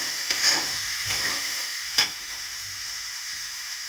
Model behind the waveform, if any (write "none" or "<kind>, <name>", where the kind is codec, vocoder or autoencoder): autoencoder, DAC-VAE